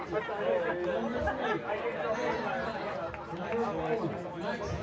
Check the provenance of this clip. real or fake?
real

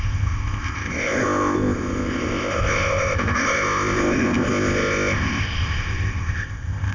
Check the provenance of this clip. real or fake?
fake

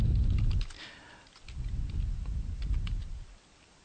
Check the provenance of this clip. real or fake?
real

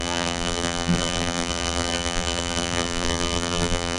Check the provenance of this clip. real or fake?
fake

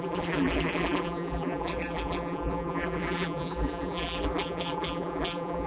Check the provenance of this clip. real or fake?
fake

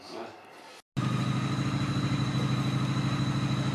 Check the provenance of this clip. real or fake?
real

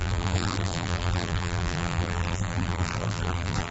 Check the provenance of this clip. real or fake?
fake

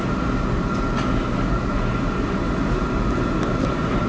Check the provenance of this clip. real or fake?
real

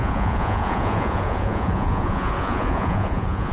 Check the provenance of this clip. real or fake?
fake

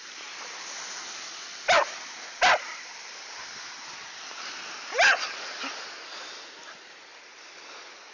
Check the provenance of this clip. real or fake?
real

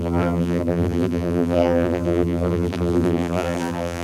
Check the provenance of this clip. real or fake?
fake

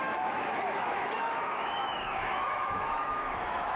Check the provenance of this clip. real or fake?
fake